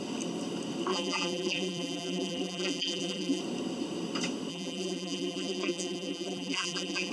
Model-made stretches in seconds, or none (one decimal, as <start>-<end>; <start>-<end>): 0.9-3.4; 4.5-7.1